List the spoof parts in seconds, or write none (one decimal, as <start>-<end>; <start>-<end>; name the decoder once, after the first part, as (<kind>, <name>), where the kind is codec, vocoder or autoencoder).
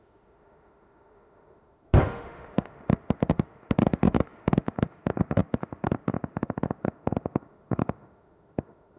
0.0-9.0 (autoencoder, DAC-VAE)